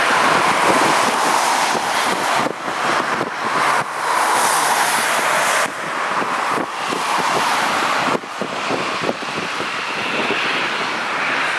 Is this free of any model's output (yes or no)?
no